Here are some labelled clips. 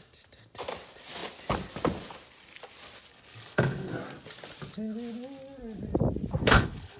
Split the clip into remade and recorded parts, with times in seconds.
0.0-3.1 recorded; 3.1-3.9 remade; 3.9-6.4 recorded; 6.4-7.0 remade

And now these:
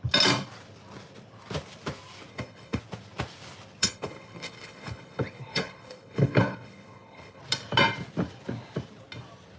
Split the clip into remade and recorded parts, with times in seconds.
0.0-2.3 recorded; 2.3-2.8 remade; 2.8-3.8 recorded; 3.8-7.4 remade; 7.4-9.6 recorded

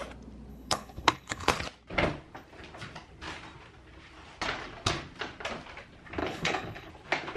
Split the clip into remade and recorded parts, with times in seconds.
0.0-0.5 recorded; 0.5-1.5 remade; 1.5-6.2 recorded; 6.2-6.9 remade; 6.9-7.4 recorded